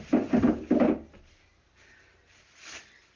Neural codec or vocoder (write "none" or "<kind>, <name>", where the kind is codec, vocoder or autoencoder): none